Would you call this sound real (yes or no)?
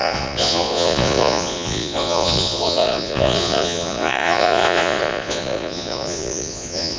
no